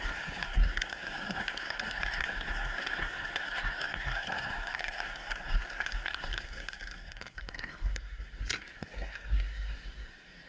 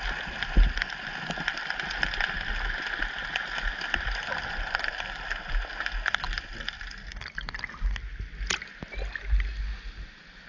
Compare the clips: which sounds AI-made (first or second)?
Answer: first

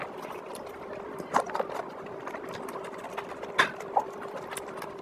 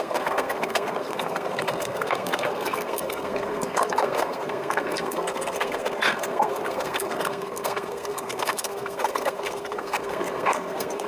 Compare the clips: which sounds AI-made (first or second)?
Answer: second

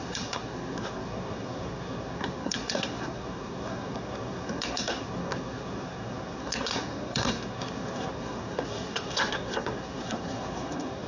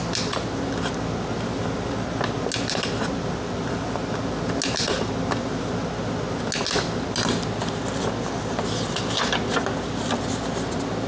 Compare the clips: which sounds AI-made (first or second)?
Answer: first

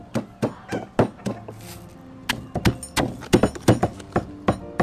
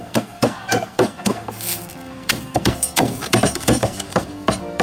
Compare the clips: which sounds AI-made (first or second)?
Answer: second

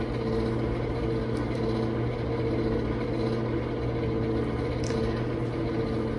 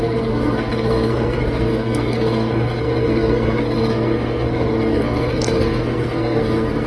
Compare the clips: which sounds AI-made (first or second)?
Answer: second